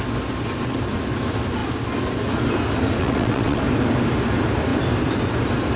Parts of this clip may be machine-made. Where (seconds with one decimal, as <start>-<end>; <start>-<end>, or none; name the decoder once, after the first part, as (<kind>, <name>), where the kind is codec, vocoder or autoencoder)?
3.0-3.6 (vocoder, WaveNeXt)

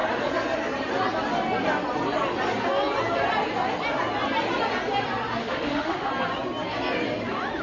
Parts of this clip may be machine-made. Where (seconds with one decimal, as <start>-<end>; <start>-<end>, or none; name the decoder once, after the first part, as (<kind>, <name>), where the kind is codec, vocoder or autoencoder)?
5.4-6.1 (autoencoder, DAC-VAE)

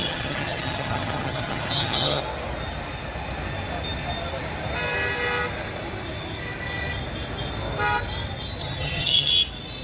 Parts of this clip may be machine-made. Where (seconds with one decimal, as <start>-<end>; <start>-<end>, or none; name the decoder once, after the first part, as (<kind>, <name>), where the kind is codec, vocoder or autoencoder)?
0.0-2.2 (vocoder, HiFi-GAN); 8.6-9.3

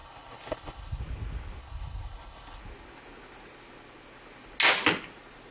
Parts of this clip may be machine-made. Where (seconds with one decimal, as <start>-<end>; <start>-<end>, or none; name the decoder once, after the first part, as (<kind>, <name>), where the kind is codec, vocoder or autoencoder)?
0.0-1.0 (codec, HILCodec); 1.6-2.6

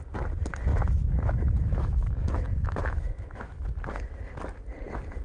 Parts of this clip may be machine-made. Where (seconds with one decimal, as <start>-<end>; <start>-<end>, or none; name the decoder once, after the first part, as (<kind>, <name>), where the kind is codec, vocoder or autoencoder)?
0.7-3.8 (autoencoder, DAC-VAE)

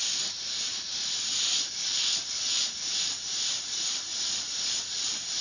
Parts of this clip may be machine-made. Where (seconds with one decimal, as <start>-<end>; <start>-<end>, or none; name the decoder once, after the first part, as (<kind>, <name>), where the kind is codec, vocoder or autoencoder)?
0.0-5.4 (vocoder, BigVGAN v2)

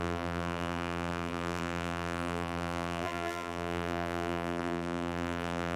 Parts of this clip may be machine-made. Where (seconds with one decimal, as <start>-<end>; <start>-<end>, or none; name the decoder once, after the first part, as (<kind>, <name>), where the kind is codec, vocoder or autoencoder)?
0.0-5.8 (vocoder, BigVGAN v2)